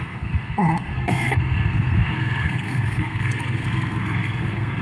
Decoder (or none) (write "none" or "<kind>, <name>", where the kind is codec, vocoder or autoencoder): codec, SNAC